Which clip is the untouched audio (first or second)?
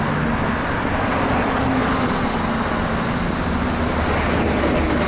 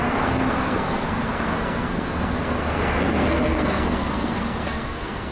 first